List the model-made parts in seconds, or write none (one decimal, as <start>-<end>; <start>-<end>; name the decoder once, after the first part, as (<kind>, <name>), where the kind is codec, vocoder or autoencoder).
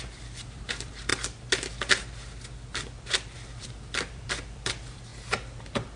0.0-1.1 (vocoder, BigVGAN v2); 3.6-5.1; 5.6-6.0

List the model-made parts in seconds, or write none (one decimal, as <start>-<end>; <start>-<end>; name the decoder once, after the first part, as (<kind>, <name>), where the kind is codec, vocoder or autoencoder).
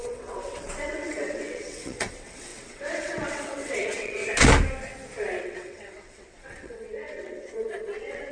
0.0-4.2 (vocoder, WaveNeXt); 5.4-8.3